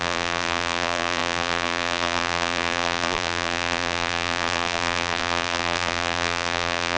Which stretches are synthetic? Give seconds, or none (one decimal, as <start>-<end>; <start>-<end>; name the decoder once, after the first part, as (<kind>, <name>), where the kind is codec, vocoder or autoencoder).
0.0-7.0 (vocoder, BigVGAN v2)

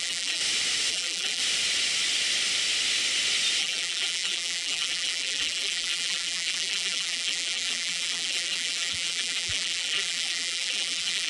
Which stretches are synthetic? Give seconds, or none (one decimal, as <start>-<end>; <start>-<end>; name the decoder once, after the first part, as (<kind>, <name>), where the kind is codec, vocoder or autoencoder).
0.0-0.4 (vocoder, BigVGAN v2); 0.9-1.4; 3.6-11.3

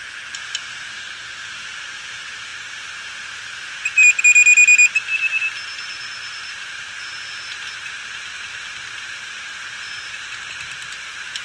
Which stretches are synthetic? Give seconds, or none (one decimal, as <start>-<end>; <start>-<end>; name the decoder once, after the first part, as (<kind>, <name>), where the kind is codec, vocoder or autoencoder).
none